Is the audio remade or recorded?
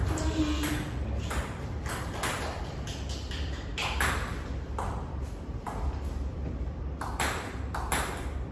remade